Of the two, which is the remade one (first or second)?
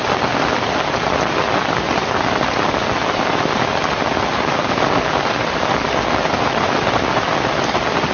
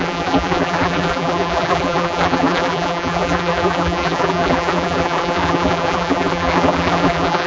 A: second